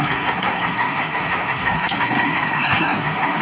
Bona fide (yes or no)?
no